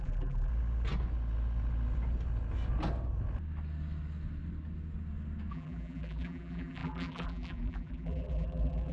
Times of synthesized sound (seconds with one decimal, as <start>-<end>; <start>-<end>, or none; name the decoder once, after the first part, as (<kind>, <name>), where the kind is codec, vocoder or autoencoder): 0.0-0.5 (vocoder, BigVGAN v2); 5.5-8.9